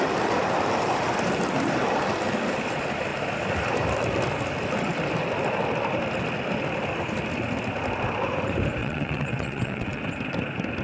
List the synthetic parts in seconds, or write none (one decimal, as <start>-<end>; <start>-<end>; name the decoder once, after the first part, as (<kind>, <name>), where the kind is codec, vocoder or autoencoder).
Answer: 8.8-10.0 (vocoder, WaveNeXt)